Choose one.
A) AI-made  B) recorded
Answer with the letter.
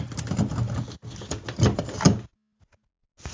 B